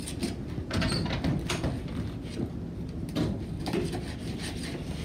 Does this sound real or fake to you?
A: real